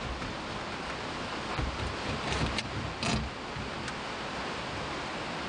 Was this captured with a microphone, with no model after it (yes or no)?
yes